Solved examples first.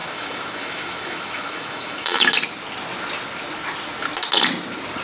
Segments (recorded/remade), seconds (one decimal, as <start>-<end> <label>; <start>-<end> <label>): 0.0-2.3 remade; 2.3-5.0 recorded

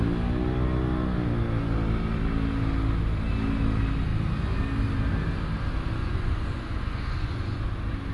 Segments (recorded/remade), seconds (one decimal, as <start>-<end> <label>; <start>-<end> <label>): 0.0-6.0 recorded; 6.0-7.6 remade; 7.6-8.1 recorded

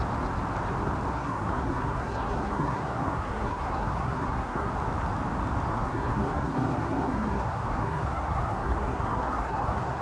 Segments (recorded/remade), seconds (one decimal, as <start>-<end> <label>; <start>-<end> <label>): 0.0-1.1 recorded; 1.1-4.7 remade; 4.7-5.7 recorded; 5.7-10.0 remade

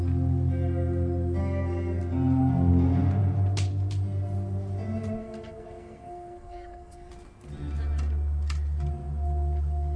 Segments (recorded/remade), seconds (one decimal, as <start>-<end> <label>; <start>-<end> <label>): 0.0-1.4 recorded; 1.4-2.0 remade; 2.0-5.2 recorded; 5.2-7.1 remade; 7.1-10.0 recorded

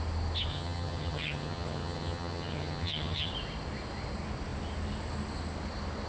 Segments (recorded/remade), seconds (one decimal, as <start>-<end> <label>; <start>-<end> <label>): 0.0-0.5 recorded; 0.5-3.3 remade; 3.3-6.1 recorded

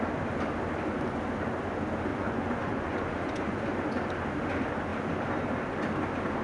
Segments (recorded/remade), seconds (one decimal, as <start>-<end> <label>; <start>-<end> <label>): 0.0-2.1 recorded; 2.1-3.6 remade; 3.6-6.4 recorded

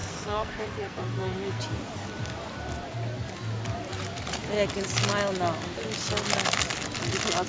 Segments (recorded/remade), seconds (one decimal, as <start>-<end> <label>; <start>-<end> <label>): 0.0-1.6 remade; 1.6-7.5 recorded

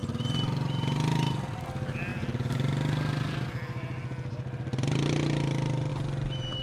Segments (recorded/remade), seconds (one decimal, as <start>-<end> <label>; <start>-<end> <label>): 0.0-6.6 recorded